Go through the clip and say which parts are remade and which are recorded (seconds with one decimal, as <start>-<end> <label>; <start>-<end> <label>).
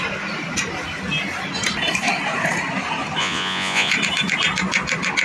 0.0-3.2 recorded; 3.2-3.9 remade; 3.9-5.2 recorded